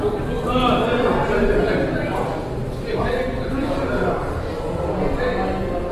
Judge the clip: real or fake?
real